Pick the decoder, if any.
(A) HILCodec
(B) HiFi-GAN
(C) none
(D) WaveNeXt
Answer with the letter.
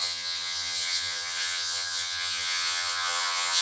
B